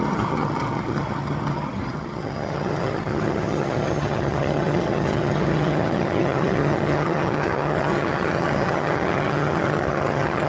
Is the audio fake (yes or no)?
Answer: yes